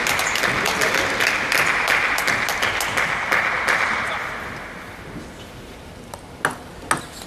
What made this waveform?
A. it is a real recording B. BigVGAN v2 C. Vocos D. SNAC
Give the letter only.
A